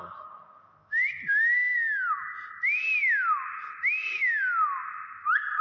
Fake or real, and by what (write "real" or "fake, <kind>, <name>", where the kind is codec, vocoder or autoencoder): real